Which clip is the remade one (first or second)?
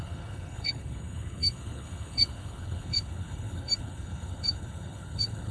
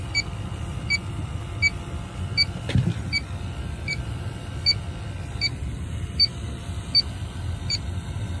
first